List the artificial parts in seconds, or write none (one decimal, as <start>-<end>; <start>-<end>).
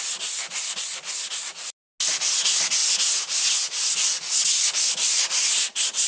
none